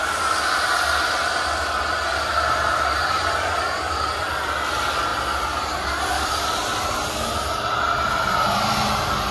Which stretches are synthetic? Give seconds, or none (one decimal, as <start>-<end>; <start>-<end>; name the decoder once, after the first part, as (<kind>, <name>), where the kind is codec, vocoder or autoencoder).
none